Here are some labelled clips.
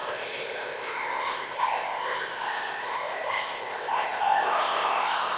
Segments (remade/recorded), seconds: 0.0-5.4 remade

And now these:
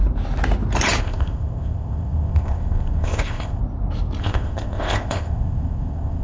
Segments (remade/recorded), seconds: 0.0-1.0 recorded; 1.0-3.6 remade; 3.6-4.2 recorded; 4.2-6.2 remade

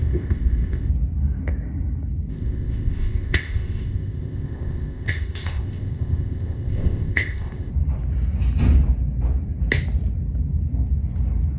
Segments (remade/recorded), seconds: 0.0-0.9 remade; 0.9-2.3 recorded; 2.3-7.7 remade; 7.7-11.6 recorded

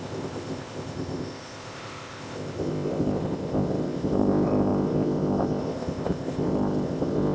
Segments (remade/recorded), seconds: 0.0-7.3 remade

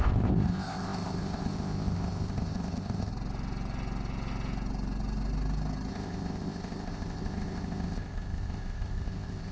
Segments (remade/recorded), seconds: 0.0-3.1 remade; 3.1-5.9 recorded; 5.9-9.5 remade

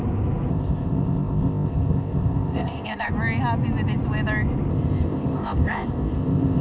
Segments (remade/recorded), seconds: 0.0-0.5 recorded; 0.5-3.1 remade; 3.1-4.7 recorded; 4.7-6.6 remade

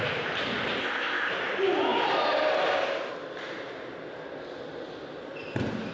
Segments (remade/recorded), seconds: 0.0-0.8 recorded; 0.8-1.3 remade; 1.3-5.9 recorded